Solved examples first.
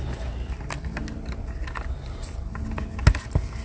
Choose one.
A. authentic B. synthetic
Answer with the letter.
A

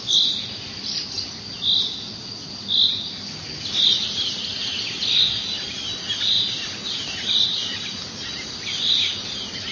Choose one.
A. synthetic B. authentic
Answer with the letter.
B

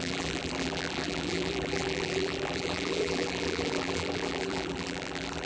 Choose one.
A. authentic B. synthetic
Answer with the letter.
B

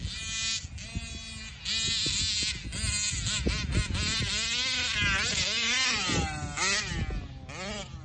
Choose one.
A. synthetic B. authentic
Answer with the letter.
B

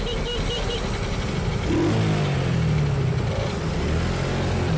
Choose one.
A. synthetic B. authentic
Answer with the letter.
B